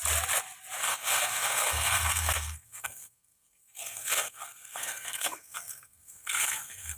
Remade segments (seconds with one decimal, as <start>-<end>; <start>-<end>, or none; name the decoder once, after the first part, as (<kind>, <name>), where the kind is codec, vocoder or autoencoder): 0.8-7.0 (codec, SNAC)